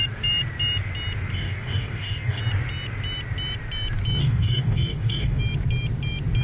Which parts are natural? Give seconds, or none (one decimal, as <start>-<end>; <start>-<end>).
0.0-1.3; 2.4-4.2; 5.4-6.4